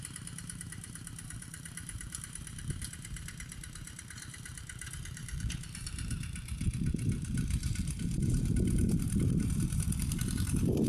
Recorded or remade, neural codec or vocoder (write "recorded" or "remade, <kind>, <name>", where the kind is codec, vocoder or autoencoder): remade, vocoder, BigVGAN v2